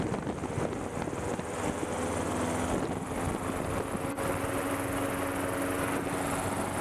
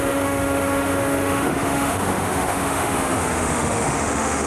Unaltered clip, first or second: first